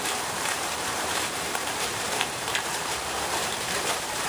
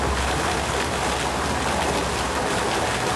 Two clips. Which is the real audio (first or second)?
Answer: second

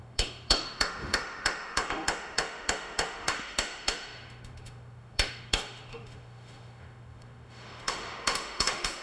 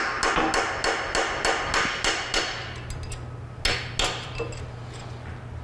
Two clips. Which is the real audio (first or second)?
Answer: second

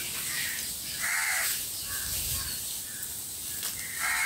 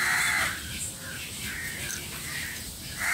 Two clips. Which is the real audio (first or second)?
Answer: first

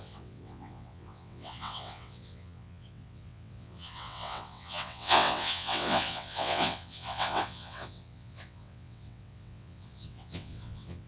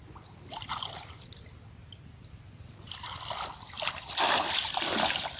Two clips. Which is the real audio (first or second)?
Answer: second